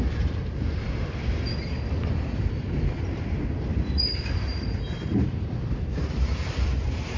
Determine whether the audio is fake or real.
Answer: fake